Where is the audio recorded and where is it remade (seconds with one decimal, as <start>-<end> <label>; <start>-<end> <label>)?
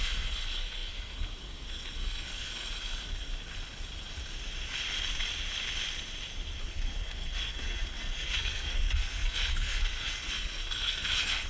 0.0-3.3 remade; 3.3-6.6 recorded; 6.6-11.5 remade